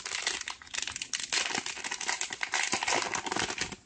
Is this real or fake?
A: real